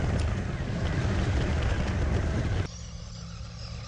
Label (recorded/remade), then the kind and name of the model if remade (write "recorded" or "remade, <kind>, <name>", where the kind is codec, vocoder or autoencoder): recorded